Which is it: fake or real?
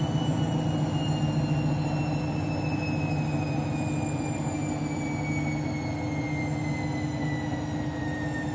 real